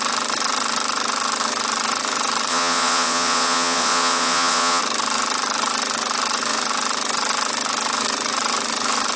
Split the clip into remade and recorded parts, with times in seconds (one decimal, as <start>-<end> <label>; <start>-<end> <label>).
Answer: 0.0-2.5 recorded; 2.5-4.8 remade; 4.8-9.2 recorded